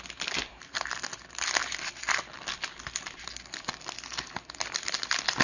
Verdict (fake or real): real